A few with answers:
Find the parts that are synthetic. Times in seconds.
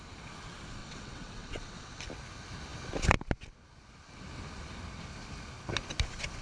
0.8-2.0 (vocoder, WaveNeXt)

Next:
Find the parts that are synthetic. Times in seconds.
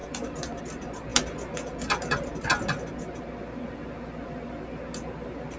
none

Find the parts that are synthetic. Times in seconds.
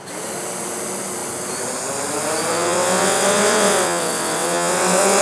2.5-5.2 (vocoder, WaveNeXt)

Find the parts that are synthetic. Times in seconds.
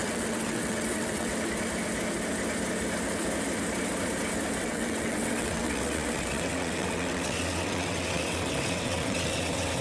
0.0-1.3 (vocoder, WaveNeXt); 4.6-9.8